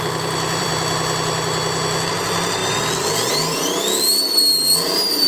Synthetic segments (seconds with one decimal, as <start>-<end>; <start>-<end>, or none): 0.0-0.7; 2.1-2.6; 3.3-5.3